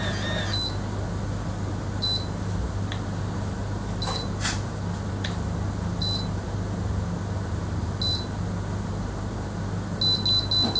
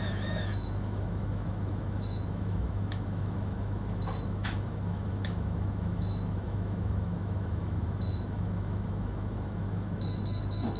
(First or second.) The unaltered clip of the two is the first